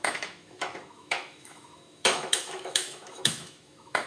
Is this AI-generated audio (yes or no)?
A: yes